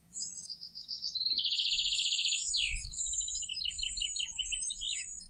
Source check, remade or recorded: remade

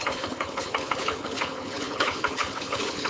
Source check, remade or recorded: remade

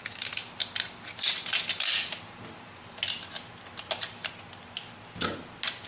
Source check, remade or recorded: recorded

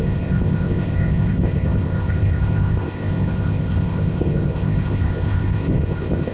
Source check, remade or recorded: remade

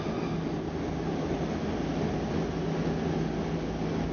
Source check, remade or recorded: recorded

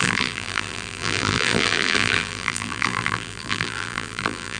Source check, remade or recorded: remade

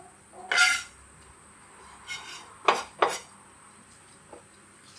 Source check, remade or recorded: recorded